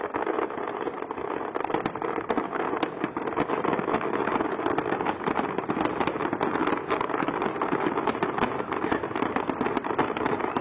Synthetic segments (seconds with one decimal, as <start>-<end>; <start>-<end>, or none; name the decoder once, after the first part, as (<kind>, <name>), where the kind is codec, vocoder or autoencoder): none